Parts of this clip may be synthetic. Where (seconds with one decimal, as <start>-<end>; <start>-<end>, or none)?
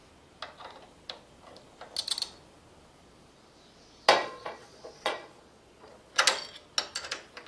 4.2-6.2